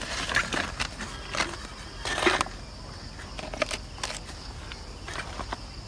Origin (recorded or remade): recorded